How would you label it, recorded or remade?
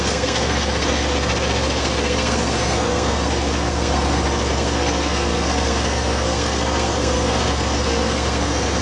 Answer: remade